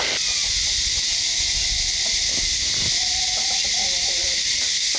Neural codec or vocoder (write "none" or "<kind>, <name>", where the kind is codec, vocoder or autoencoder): none